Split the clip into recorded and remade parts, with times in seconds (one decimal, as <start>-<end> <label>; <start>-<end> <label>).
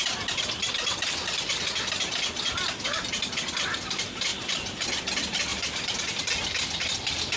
0.0-5.5 remade; 5.5-6.2 recorded; 6.2-7.4 remade